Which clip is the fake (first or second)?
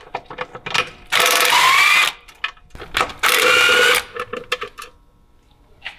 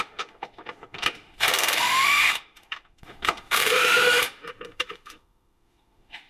second